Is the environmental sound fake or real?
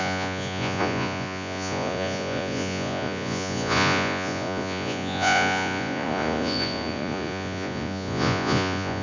fake